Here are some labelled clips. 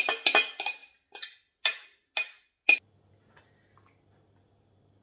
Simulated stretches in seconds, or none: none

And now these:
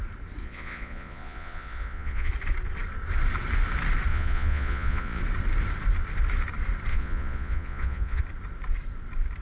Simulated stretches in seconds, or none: 0.4-2.3 (vocoder, Vocos); 4.1-5.2; 6.9-8.2

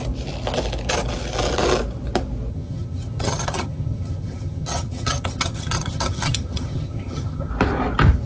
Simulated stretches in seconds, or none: 2.5-7.5 (vocoder, HiFi-GAN)

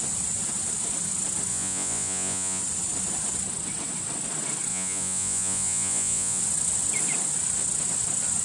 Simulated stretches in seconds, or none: 1.5-2.6 (vocoder, Vocos); 4.7-6.4